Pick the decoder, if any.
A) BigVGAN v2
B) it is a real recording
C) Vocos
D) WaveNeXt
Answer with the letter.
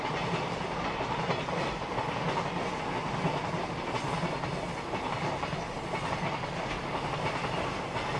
B